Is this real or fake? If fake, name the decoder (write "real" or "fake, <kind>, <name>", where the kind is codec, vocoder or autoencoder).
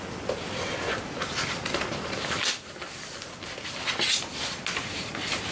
real